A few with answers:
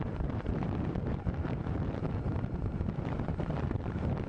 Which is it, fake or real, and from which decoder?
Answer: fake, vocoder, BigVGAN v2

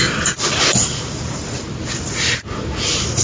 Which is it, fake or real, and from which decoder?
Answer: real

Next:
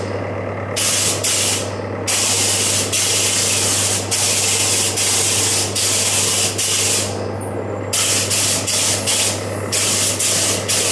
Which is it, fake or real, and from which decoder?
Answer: real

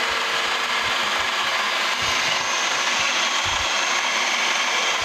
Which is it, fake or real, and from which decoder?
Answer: real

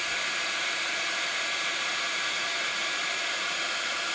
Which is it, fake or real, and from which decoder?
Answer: fake, vocoder, BigVGAN v2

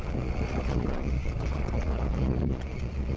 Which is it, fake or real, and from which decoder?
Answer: fake, vocoder, Vocos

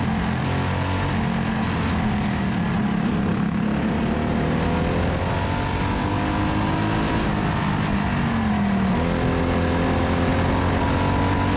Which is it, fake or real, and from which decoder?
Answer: real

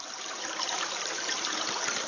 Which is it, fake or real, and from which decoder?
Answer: fake, vocoder, BigVGAN v2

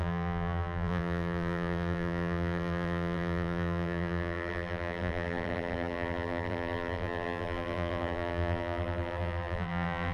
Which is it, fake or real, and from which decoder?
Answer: fake, vocoder, BigVGAN v2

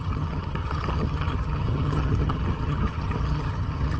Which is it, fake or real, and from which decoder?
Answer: fake, vocoder, HiFi-GAN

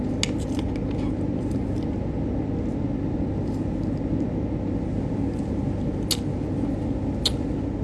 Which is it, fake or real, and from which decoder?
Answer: real